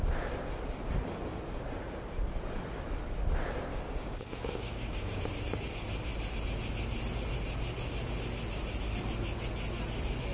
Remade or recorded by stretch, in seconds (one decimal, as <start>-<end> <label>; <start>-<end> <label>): 0.0-3.7 recorded; 3.7-5.2 remade; 5.2-10.3 recorded